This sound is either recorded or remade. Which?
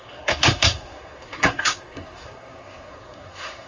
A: remade